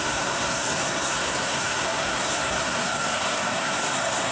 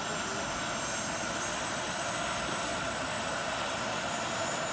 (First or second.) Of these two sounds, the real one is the second